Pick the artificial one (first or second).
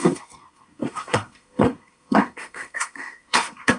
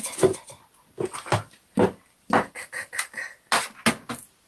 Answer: first